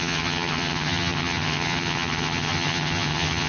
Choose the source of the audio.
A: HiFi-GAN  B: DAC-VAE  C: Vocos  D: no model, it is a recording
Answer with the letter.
A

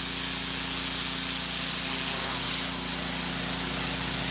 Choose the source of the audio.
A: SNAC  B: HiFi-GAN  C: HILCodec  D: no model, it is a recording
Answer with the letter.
D